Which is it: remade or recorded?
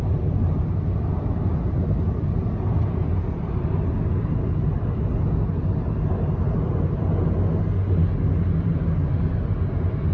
recorded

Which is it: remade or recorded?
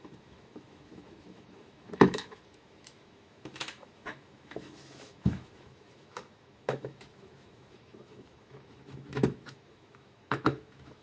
remade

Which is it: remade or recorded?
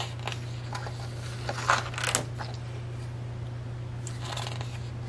recorded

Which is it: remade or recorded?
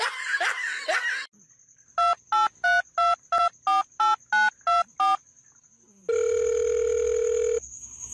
recorded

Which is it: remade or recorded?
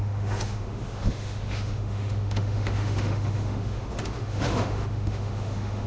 remade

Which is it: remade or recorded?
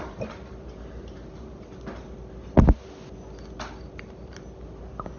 recorded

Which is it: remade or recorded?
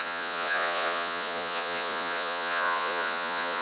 remade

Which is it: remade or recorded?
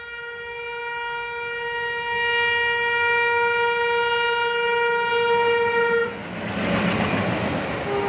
recorded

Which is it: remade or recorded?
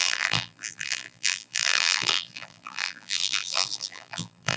remade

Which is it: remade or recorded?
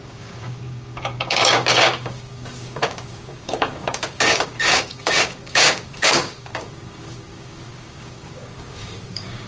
remade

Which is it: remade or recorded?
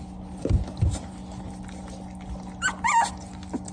recorded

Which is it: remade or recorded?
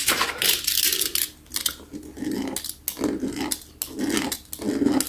recorded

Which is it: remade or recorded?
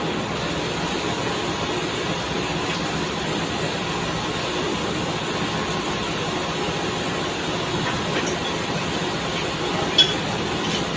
recorded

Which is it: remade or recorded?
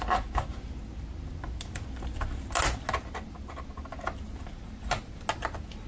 recorded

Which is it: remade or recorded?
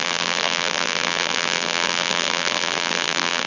remade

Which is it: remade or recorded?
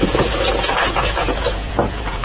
remade